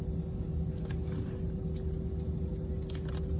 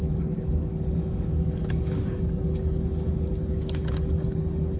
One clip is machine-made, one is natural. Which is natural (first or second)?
first